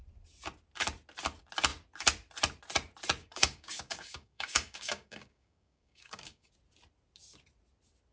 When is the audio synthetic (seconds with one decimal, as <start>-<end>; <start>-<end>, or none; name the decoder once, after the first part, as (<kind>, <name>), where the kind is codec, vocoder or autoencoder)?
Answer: 3.2-6.5 (codec, DAC)